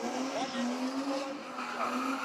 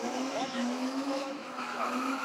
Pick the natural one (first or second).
first